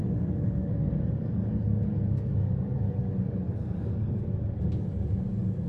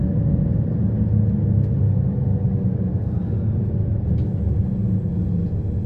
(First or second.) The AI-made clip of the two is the first